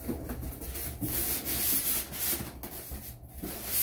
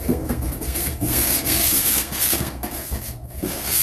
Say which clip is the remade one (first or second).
second